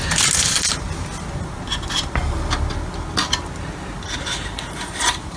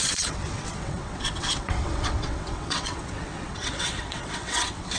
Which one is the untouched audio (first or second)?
first